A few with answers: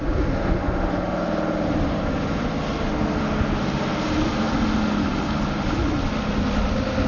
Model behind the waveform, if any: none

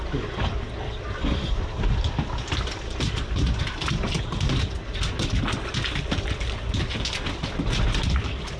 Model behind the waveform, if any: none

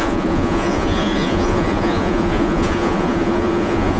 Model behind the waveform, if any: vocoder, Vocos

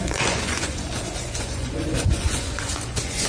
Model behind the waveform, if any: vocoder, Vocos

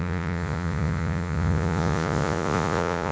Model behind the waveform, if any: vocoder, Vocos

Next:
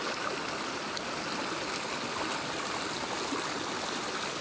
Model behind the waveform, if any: none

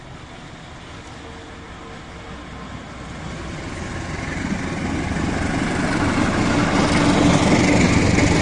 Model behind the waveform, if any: none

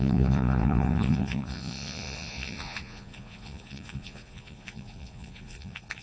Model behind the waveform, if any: vocoder, Vocos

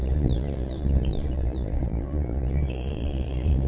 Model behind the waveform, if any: vocoder, Vocos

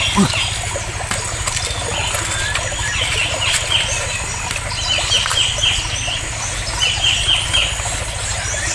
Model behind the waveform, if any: none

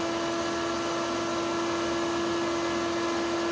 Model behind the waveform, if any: none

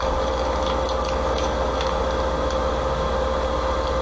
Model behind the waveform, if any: none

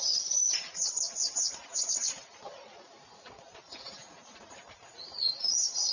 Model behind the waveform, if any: vocoder, Vocos